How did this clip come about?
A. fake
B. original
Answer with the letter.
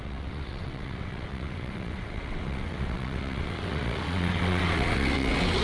A